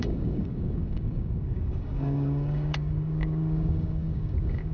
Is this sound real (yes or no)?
no